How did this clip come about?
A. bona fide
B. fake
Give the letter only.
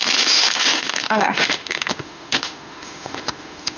B